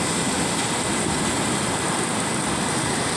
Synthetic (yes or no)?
yes